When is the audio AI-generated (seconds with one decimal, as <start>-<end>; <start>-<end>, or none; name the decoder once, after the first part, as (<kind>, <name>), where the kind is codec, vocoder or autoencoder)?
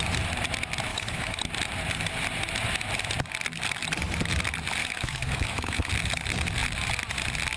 0.9-1.4 (autoencoder, DAC-VAE); 4.8-5.9